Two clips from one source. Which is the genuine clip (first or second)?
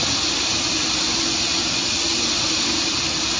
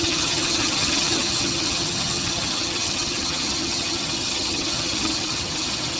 first